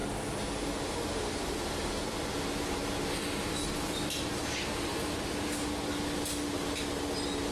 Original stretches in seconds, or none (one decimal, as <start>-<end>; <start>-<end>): 0.0-7.5

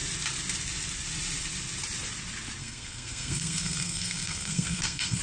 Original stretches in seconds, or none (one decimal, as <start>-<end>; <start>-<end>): 0.0-2.6